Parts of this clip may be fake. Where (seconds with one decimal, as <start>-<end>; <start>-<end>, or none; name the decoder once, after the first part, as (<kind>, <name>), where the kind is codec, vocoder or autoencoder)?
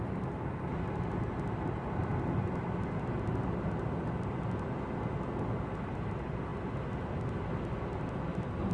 none